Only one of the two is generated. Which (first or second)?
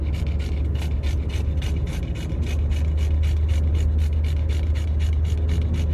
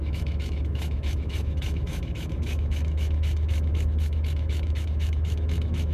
second